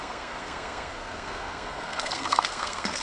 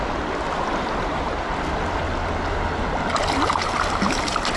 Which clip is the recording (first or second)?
second